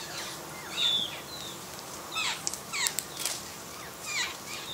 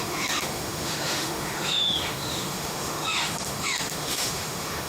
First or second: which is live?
first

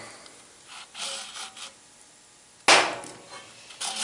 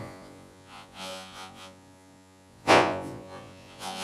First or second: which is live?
first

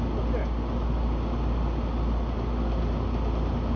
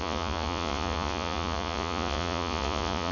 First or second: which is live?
first